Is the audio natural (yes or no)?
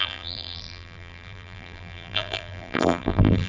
no